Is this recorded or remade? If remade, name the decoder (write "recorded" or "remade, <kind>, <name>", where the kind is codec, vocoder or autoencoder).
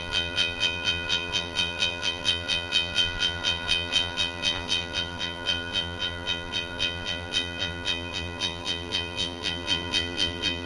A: remade, vocoder, BigVGAN v2